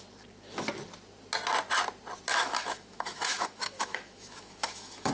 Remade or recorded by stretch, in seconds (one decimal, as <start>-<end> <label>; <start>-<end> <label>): 0.0-2.3 recorded; 2.3-5.1 remade